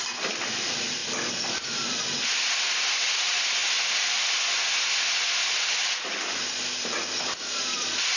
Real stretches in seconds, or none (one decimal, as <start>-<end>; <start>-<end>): 0.0-8.2